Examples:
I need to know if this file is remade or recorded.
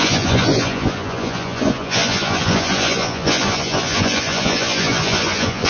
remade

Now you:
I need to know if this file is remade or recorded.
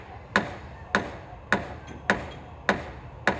recorded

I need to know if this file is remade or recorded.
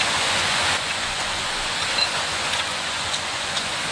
remade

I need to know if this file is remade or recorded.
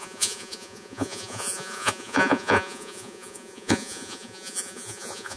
remade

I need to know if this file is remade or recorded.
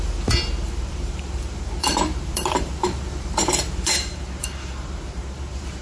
remade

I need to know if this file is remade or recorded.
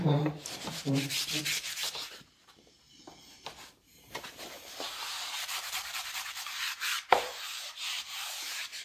remade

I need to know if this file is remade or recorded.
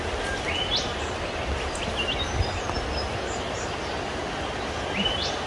recorded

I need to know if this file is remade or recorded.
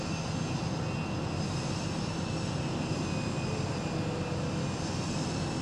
recorded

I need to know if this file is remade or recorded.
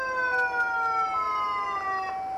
recorded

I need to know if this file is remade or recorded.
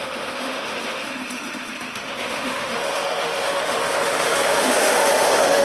remade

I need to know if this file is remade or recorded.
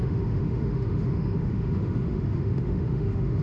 remade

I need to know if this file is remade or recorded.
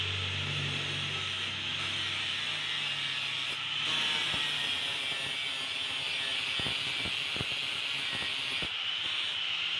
recorded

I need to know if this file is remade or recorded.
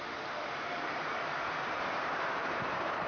remade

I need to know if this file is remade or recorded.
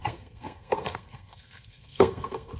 remade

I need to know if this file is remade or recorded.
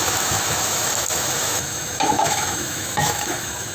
remade